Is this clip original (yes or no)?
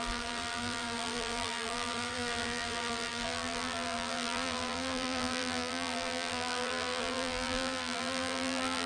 no